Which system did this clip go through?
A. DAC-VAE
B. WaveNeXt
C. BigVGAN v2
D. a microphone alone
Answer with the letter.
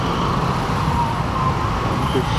D